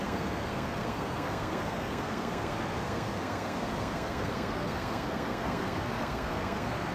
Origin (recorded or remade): remade